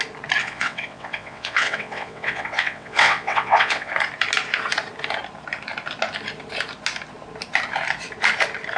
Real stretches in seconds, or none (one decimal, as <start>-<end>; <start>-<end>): 0.0-0.4; 3.9-8.8